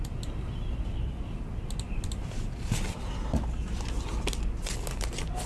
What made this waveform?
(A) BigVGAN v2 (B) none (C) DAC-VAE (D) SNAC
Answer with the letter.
B